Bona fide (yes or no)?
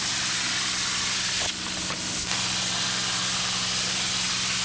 yes